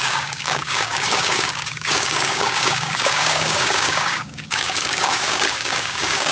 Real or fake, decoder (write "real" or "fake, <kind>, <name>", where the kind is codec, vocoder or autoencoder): fake, codec, DAC